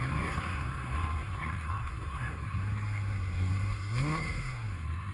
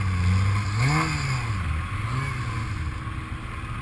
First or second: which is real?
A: second